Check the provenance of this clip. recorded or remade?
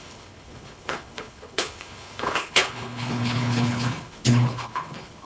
remade